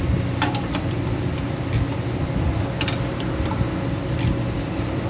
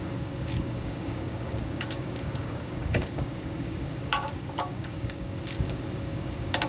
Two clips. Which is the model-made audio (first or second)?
second